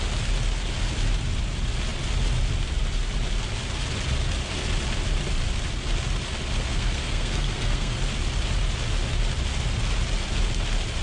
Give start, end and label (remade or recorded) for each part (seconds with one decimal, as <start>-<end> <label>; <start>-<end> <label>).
0.0-6.7 recorded; 6.7-8.0 remade; 8.0-11.0 recorded